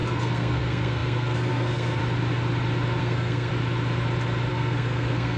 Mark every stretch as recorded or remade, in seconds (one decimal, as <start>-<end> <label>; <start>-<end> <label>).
0.0-2.0 remade; 2.0-3.0 recorded; 3.0-3.5 remade; 3.5-4.5 recorded; 4.5-5.4 remade

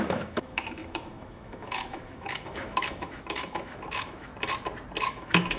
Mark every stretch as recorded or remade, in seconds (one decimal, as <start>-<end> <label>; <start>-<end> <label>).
0.0-4.3 remade; 4.3-5.0 recorded; 5.0-5.6 remade

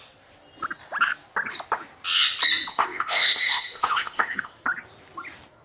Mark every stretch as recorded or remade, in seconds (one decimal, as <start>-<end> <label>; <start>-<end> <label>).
0.0-2.7 recorded; 2.7-4.5 remade; 4.5-5.6 recorded

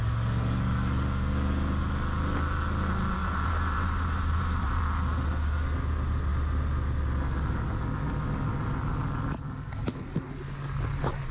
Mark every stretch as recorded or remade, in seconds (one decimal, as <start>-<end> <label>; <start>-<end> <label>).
0.0-3.2 recorded; 3.2-4.8 remade; 4.8-11.3 recorded

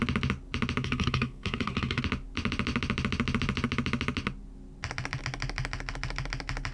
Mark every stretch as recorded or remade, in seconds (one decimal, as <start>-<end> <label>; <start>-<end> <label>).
0.0-0.8 recorded; 0.8-2.0 remade; 2.0-6.7 recorded